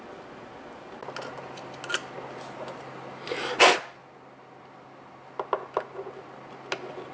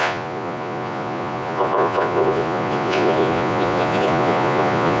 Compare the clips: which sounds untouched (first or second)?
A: first